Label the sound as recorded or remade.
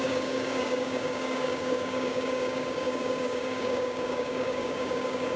remade